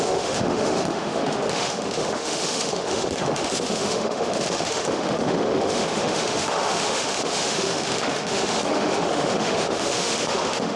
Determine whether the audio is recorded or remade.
remade